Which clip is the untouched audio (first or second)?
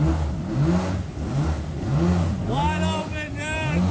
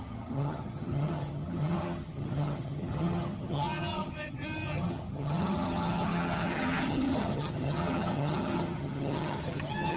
first